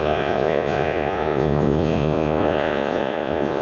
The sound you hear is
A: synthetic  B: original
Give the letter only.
A